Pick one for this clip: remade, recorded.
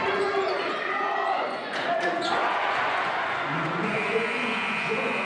remade